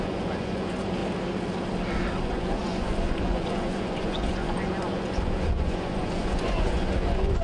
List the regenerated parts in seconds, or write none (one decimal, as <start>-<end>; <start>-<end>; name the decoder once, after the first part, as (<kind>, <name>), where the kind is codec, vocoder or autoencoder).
0.0-1.0 (vocoder, Vocos); 2.2-7.4